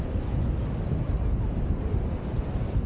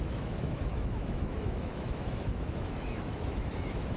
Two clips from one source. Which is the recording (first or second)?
first